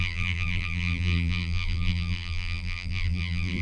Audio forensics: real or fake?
fake